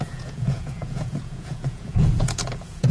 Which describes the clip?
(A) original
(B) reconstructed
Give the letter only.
B